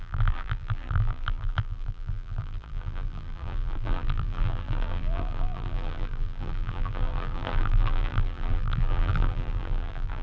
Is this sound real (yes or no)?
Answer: no